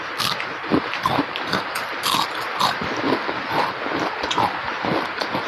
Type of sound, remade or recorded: recorded